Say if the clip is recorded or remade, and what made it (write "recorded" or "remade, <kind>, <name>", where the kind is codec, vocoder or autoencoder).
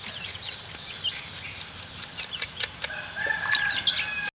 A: recorded